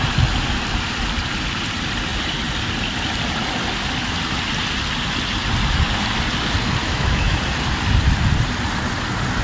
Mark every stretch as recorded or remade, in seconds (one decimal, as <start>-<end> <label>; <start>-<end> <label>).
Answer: 0.0-6.8 recorded; 6.8-7.4 remade; 7.4-9.4 recorded